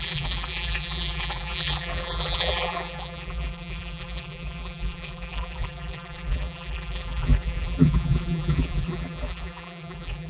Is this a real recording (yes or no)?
no